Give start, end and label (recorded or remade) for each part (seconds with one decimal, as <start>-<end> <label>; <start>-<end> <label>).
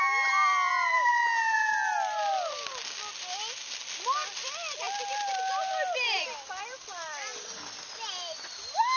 0.0-1.1 remade; 1.1-5.7 recorded; 5.7-9.0 remade